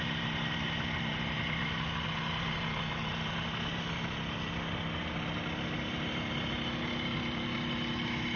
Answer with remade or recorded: recorded